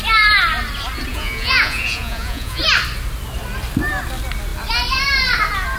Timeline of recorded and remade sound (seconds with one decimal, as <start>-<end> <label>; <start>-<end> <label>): 0.0-1.1 recorded; 1.1-2.6 remade; 2.6-5.8 recorded